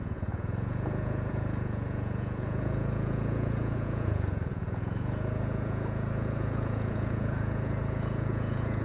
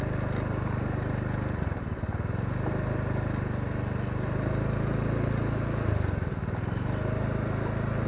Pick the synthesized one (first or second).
first